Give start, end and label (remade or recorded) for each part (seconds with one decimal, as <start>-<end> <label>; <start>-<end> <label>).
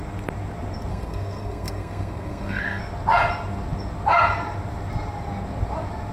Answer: 0.0-0.9 recorded; 0.9-2.8 remade; 2.8-6.1 recorded